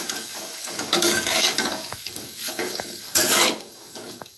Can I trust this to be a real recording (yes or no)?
no